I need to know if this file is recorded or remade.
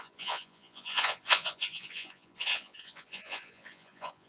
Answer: remade